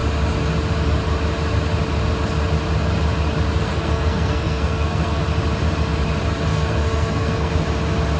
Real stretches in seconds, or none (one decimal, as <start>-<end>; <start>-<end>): 0.0-3.6; 5.2-6.5; 7.5-8.2